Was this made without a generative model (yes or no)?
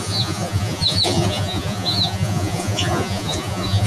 no